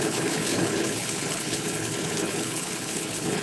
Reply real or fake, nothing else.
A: fake